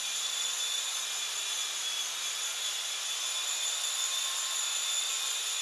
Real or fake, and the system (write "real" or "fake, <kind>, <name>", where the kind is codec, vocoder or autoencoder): real